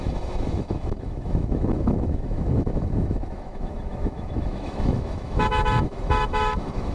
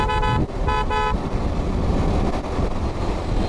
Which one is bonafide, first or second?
second